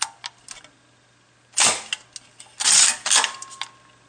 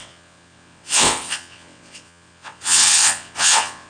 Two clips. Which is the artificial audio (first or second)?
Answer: second